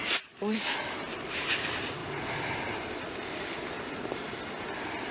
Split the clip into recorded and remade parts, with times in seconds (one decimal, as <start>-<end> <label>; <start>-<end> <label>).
0.0-5.1 recorded

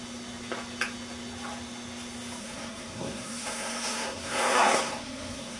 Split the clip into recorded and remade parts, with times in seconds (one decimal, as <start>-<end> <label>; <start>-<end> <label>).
0.0-2.4 recorded; 2.4-5.6 remade

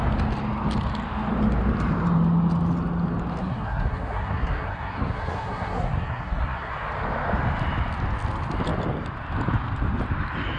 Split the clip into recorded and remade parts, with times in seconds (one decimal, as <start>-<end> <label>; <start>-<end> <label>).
0.0-3.4 recorded; 3.4-6.7 remade; 6.7-10.6 recorded

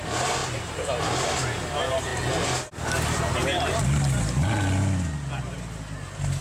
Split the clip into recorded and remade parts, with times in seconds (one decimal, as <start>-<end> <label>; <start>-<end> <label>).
0.0-6.4 recorded

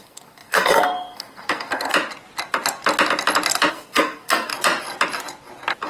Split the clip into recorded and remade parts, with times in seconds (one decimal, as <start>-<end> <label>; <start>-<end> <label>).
0.0-1.9 remade; 1.9-3.7 recorded; 3.7-4.5 remade; 4.5-5.9 recorded

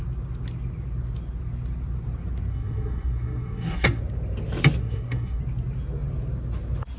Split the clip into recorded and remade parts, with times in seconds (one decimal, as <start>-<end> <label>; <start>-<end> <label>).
0.0-2.5 recorded; 2.5-4.0 remade; 4.0-4.8 recorded; 4.8-5.4 remade; 5.4-7.0 recorded